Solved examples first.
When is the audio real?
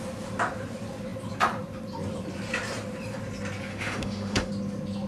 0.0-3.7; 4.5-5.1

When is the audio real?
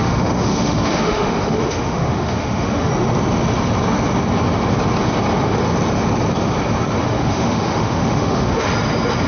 2.9-7.0; 8.7-9.3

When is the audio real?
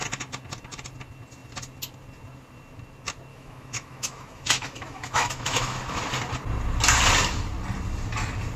0.0-3.3; 5.8-8.6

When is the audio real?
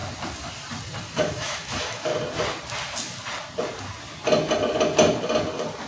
0.0-1.1; 2.1-5.9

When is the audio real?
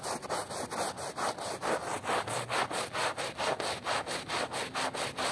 0.0-5.3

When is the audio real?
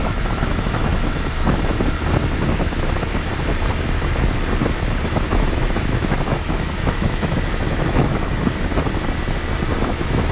0.9-2.5; 3.3-5.0; 8.7-9.8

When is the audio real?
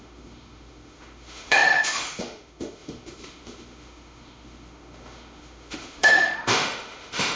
none